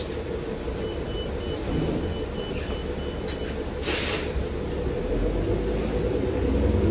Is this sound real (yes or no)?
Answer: yes